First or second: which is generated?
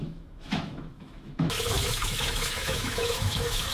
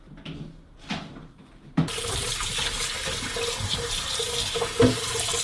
first